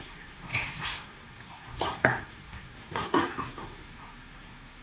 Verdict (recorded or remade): remade